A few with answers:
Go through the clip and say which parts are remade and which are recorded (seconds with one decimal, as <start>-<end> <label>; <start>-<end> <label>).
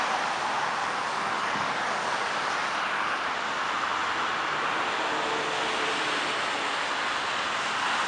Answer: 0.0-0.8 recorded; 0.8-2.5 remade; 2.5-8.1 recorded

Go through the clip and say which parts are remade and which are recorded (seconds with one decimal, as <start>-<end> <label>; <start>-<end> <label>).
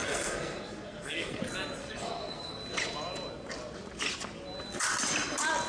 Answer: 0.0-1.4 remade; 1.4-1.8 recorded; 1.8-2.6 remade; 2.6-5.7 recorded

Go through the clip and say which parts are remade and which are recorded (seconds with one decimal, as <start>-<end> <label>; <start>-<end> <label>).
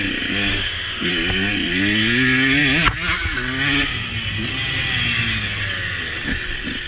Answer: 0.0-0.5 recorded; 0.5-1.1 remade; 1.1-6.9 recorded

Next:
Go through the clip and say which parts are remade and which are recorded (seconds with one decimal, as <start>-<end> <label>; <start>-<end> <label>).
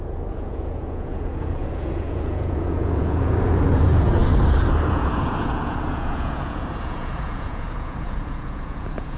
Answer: 0.0-4.2 remade; 4.2-4.9 recorded; 4.9-9.2 remade